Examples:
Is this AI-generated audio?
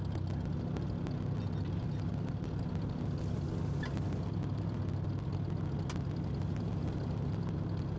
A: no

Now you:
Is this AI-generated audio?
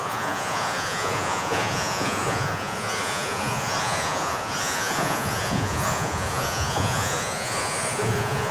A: yes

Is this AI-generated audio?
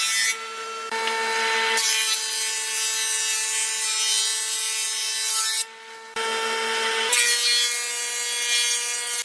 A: no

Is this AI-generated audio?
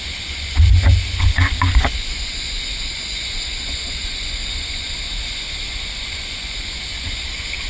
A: yes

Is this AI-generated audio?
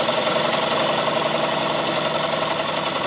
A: no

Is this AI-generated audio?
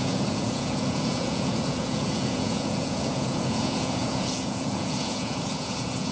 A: yes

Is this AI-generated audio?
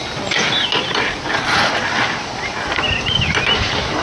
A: no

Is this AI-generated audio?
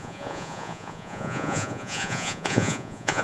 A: yes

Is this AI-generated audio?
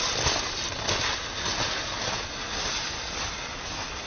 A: no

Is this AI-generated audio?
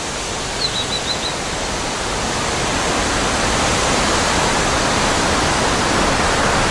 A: no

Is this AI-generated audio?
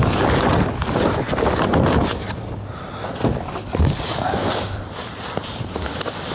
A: no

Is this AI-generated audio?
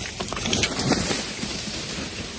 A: no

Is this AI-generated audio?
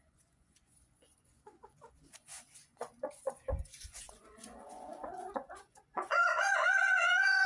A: yes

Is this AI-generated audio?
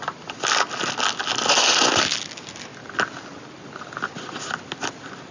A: no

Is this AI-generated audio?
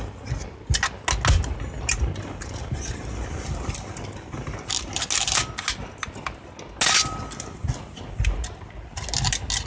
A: no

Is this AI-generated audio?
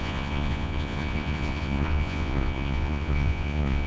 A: yes